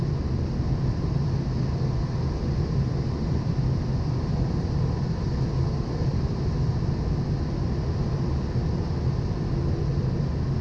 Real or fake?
real